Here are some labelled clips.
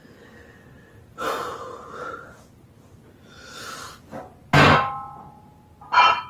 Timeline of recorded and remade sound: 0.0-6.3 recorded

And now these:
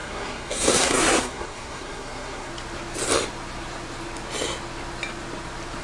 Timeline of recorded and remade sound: 0.0-2.5 remade; 2.5-5.8 recorded

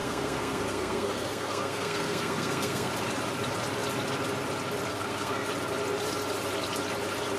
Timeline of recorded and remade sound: 0.0-2.9 remade; 2.9-4.9 recorded; 4.9-5.5 remade; 5.5-7.4 recorded

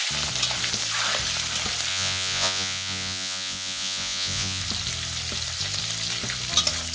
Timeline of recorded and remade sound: 0.0-1.9 recorded; 1.9-4.6 remade; 4.6-6.9 recorded

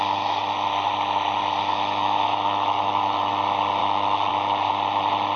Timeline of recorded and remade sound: 0.0-1.7 recorded; 1.7-3.3 remade; 3.3-3.8 recorded; 3.8-4.3 remade; 4.3-5.4 recorded

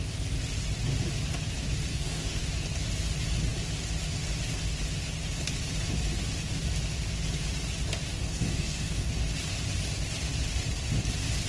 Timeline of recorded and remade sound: 0.0-1.9 recorded; 1.9-2.4 remade; 2.4-8.1 recorded; 8.1-9.1 remade; 9.1-11.5 recorded

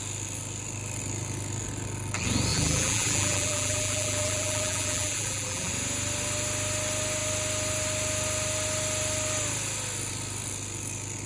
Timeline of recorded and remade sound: 0.0-2.5 recorded; 2.5-5.7 remade; 5.7-11.3 recorded